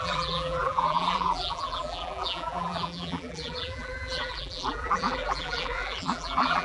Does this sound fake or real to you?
fake